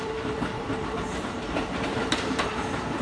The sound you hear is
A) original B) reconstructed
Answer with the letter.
B